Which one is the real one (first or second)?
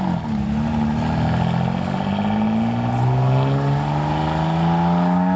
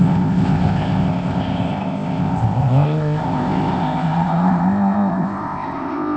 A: first